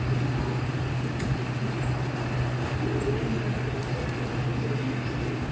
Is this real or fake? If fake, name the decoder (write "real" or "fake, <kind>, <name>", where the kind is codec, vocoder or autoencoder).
real